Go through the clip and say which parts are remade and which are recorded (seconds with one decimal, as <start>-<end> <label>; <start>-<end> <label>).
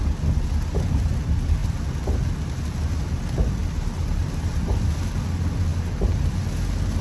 0.0-3.6 recorded; 3.6-4.8 remade; 4.8-5.7 recorded; 5.7-6.5 remade; 6.5-7.0 recorded